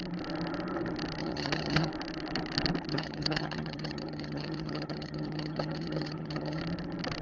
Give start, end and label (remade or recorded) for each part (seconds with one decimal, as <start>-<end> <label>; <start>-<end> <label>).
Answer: 0.0-1.2 recorded; 1.2-1.9 remade; 1.9-2.9 recorded; 2.9-6.6 remade; 6.6-7.2 recorded